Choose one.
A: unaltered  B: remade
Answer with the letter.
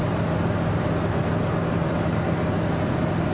A